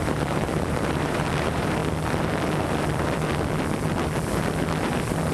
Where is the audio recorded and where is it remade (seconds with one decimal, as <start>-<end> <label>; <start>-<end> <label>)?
0.0-1.8 remade; 1.8-5.3 recorded